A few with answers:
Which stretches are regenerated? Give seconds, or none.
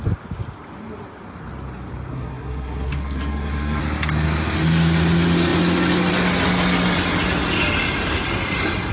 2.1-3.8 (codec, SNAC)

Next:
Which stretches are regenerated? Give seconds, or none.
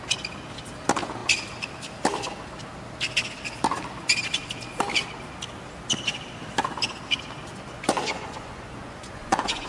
7.5-9.7 (vocoder, Vocos)